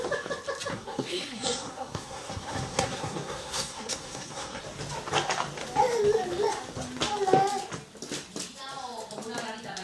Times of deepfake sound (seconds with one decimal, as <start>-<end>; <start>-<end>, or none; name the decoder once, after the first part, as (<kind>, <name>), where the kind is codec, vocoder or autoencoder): 0.7-4.6 (codec, SNAC)